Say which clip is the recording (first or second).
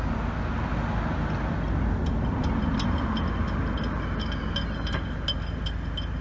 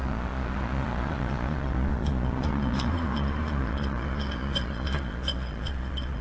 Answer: first